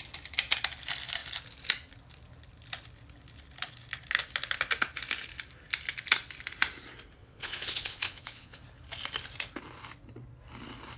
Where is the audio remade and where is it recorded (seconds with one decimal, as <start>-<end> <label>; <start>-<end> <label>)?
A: 0.0-7.2 recorded; 7.2-8.6 remade; 8.6-11.0 recorded